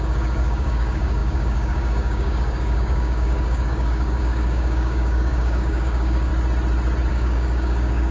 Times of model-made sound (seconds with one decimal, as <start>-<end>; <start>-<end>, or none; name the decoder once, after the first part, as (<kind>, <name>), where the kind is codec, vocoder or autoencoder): 0.0-6.3 (codec, DAC); 7.1-8.1